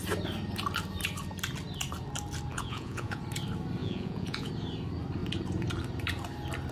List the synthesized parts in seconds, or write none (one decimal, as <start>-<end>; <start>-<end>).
2.5-3.2; 3.8-4.5